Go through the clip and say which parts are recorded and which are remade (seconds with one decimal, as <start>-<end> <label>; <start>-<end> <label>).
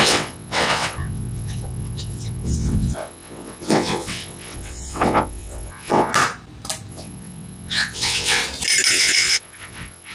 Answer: 0.0-6.1 remade; 6.1-6.9 recorded; 6.9-8.4 remade; 8.4-8.9 recorded; 8.9-10.1 remade